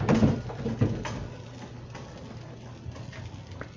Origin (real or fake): real